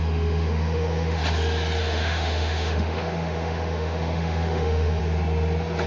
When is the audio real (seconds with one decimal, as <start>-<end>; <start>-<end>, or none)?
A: 1.2-1.8; 5.0-5.9